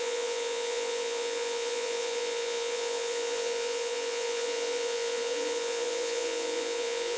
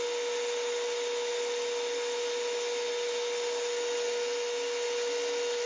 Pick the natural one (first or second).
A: second